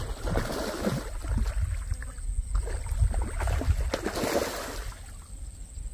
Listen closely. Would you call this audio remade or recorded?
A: recorded